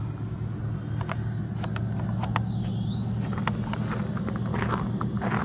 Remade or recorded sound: recorded